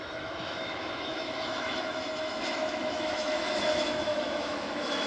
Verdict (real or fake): fake